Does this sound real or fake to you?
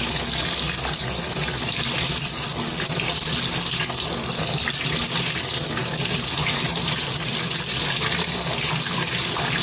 real